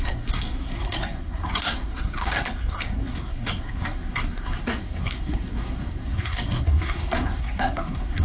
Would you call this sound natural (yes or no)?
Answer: no